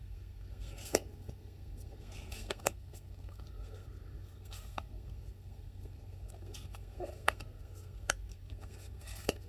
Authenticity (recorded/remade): remade